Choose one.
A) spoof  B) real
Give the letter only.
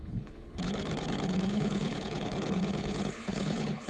A